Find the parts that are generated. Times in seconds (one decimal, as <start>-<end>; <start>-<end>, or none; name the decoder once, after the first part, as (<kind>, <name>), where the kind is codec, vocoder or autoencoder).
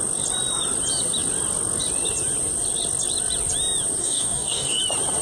4.0-4.8 (codec, DAC)